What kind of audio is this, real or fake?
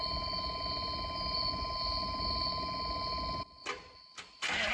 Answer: real